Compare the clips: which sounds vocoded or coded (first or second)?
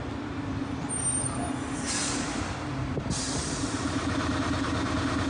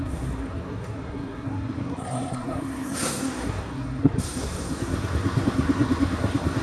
second